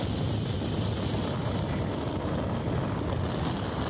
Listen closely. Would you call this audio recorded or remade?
recorded